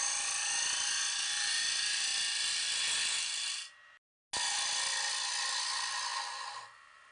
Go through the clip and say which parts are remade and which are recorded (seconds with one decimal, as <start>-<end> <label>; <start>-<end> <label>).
0.0-7.1 recorded